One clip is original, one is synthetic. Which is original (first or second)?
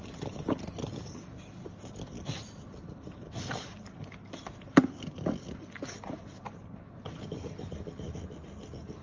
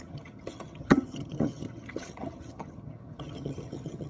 first